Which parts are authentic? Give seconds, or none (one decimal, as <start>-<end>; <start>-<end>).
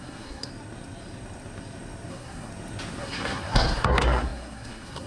0.5-2.1; 2.5-3.0